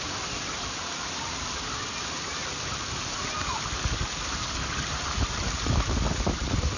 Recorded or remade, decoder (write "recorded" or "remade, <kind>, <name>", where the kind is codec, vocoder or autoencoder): recorded